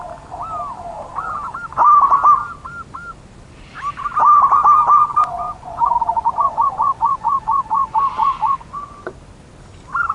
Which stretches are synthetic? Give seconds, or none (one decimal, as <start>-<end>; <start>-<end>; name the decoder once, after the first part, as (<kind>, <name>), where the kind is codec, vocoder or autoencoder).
5.1-9.1 (vocoder, Vocos)